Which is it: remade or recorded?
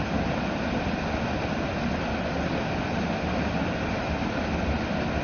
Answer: recorded